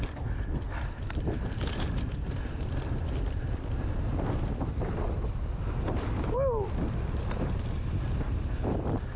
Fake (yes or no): no